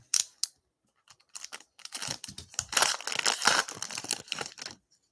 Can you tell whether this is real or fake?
real